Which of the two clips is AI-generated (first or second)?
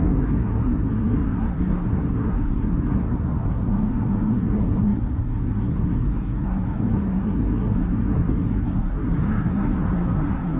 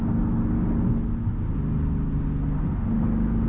first